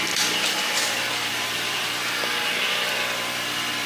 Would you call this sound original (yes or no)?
no